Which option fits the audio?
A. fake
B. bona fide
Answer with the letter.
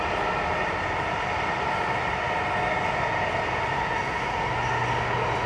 B